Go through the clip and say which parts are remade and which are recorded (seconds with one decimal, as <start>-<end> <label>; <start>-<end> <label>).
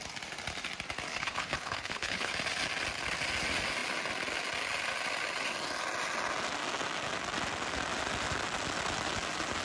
0.0-1.1 recorded; 1.1-2.3 remade; 2.3-9.6 recorded